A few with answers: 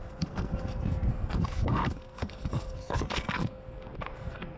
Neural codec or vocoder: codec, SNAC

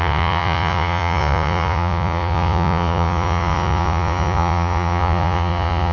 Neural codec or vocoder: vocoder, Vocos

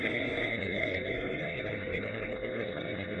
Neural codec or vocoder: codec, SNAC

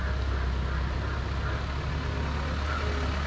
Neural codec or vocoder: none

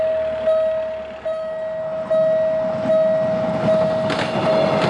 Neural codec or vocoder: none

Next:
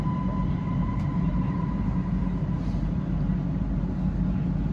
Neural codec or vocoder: none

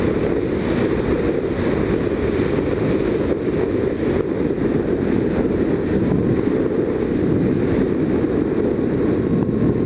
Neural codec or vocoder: none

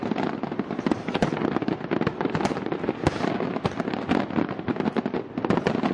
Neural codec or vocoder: none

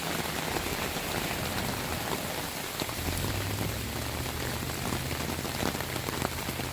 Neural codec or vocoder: none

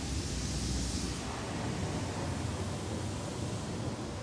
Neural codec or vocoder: none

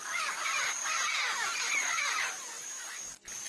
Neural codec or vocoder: none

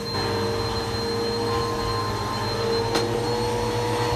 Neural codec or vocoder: none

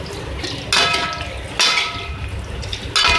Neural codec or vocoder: none